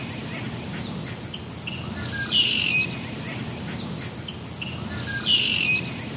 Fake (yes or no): no